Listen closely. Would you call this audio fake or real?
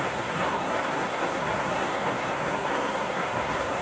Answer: fake